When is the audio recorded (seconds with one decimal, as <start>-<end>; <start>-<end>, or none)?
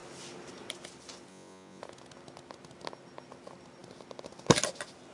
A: 0.0-1.3; 1.8-5.1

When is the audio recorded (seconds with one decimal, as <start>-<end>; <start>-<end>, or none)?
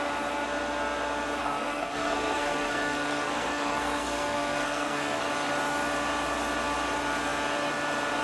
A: 0.0-1.4; 5.3-8.2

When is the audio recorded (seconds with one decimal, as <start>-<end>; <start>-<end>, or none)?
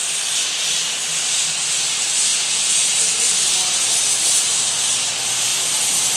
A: 0.0-2.3; 3.0-6.2